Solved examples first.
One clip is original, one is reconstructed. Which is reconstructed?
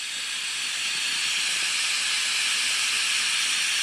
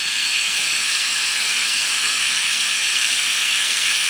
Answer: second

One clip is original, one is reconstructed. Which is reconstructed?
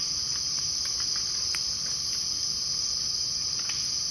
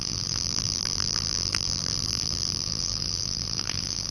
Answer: second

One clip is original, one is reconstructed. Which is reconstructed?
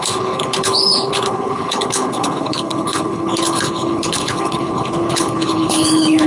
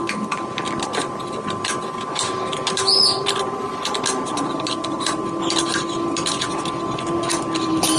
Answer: first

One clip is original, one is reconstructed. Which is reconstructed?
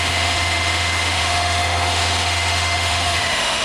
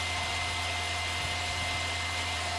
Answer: first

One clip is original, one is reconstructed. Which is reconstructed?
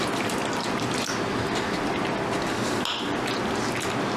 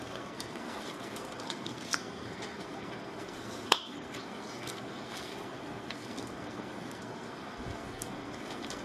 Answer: second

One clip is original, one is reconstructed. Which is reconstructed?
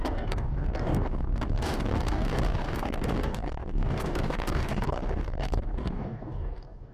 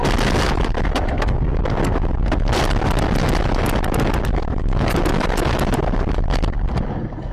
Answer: first